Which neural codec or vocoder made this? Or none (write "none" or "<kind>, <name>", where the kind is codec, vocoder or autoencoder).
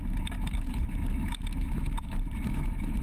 autoencoder, DAC-VAE